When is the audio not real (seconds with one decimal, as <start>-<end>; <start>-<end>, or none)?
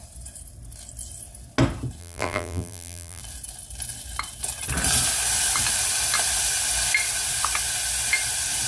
2.0-3.2